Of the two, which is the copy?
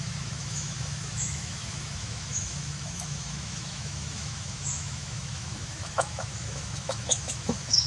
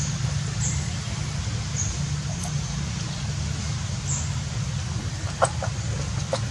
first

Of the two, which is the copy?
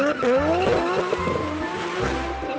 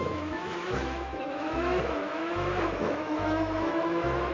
second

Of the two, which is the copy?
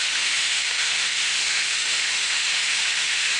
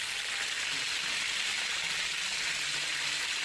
first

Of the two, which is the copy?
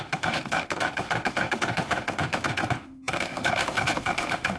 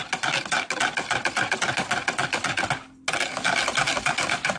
first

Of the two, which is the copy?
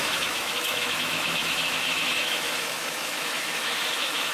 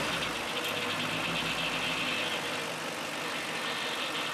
first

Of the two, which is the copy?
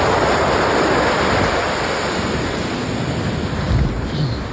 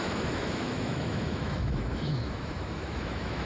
second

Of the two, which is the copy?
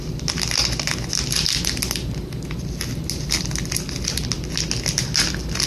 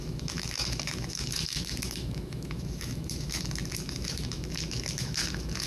second